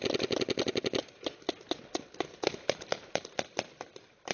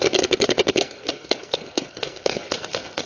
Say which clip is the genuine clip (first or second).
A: first